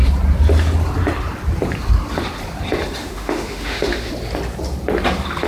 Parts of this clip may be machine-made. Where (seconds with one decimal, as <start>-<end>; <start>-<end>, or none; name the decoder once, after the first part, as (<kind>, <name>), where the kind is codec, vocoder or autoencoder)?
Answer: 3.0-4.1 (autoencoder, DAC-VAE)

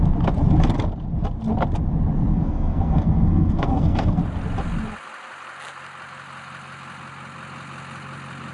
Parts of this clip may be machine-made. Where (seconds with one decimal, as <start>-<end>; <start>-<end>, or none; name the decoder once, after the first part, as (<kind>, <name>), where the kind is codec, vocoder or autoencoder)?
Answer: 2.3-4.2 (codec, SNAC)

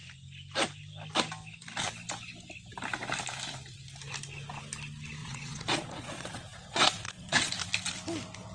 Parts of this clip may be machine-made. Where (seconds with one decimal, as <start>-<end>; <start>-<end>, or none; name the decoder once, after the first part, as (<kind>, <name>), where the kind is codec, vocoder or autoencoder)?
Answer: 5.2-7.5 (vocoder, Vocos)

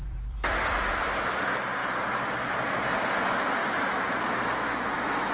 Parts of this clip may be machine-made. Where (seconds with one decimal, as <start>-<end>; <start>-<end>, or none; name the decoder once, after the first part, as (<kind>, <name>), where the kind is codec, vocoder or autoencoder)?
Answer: 3.6-5.3 (autoencoder, DAC-VAE)